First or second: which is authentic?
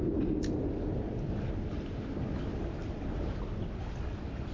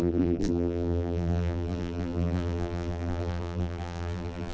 first